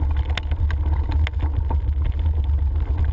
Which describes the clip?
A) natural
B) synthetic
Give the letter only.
A